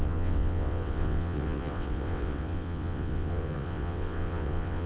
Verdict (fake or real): fake